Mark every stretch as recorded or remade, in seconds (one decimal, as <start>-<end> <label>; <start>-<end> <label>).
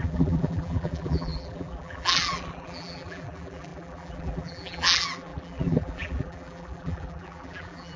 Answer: 0.0-8.0 remade